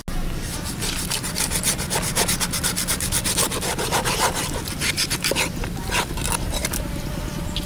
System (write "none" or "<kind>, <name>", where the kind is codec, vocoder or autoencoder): none